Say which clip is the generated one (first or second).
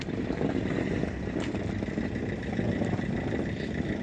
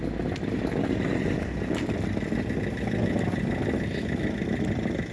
first